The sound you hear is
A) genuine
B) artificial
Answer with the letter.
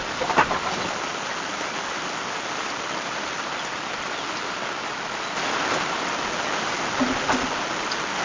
A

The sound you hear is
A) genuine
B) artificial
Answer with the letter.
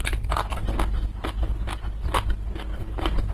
A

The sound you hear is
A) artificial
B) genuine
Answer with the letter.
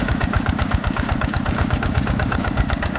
A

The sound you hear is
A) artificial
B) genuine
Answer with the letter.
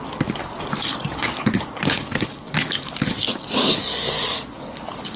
A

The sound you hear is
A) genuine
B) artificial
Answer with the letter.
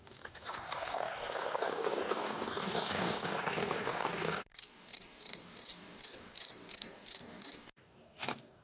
B